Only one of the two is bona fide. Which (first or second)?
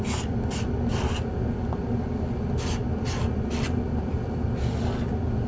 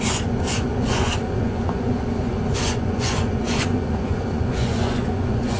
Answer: first